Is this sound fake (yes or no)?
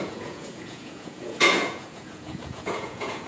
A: yes